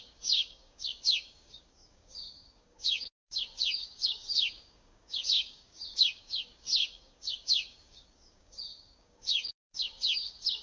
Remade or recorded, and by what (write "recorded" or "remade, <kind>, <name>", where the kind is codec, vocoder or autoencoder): remade, codec, DAC